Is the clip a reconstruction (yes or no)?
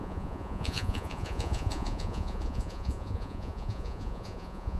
yes